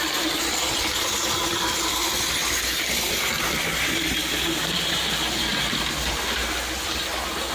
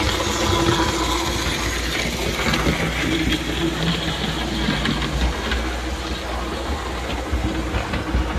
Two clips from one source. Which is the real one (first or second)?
second